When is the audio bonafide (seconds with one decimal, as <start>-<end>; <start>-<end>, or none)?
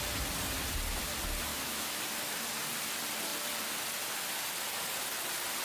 0.0-1.5; 2.0-5.6